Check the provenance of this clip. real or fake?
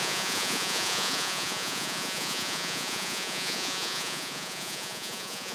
fake